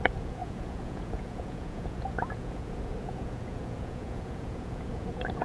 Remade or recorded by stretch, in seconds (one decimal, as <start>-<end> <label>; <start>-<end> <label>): 0.0-5.4 remade